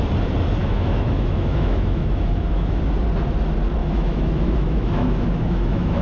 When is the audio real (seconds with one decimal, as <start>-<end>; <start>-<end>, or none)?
0.0-0.6; 2.8-3.8